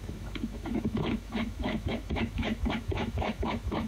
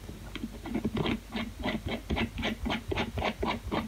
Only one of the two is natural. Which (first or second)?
second